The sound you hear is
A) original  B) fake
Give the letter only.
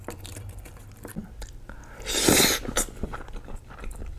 A